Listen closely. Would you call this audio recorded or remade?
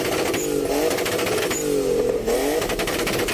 recorded